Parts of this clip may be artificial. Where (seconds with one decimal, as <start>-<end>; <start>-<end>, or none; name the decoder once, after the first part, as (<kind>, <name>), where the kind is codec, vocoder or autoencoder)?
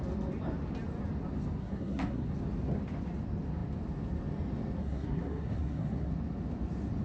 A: 1.6-2.3 (codec, SNAC); 4.8-6.1